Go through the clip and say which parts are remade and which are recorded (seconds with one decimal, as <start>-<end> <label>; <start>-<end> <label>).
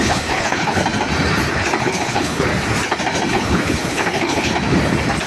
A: 0.0-0.8 remade; 0.8-1.8 recorded; 1.8-2.5 remade; 2.5-3.3 recorded; 3.3-4.5 remade; 4.5-5.3 recorded